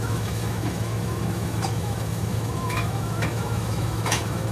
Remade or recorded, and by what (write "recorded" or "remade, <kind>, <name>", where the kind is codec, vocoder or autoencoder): remade, autoencoder, DAC-VAE